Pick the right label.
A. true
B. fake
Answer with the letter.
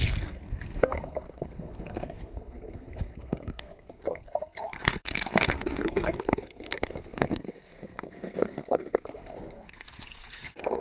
B